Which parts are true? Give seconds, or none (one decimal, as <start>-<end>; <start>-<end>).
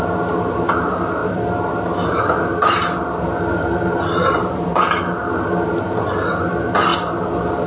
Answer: 0.0-1.2; 5.8-6.9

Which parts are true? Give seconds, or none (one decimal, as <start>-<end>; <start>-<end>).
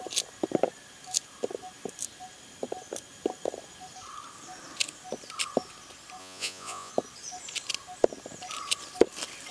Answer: 0.0-6.2; 6.9-9.5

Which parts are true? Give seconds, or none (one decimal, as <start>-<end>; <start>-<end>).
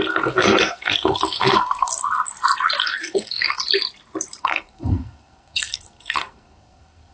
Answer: 1.9-2.8; 3.6-4.4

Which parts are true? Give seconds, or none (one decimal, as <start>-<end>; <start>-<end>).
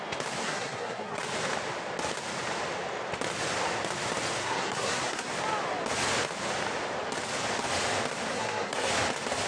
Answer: 0.0-0.4; 1.2-4.4; 5.3-8.3; 8.9-9.5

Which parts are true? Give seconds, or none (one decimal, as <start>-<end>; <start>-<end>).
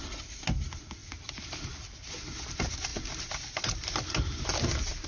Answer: 0.0-5.1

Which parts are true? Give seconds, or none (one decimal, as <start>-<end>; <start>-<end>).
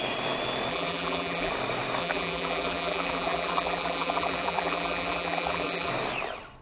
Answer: 0.0-0.7; 1.5-2.0; 5.9-6.6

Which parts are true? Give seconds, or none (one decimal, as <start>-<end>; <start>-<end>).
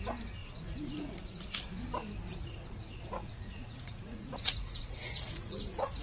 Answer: 0.0-0.4; 1.4-2.3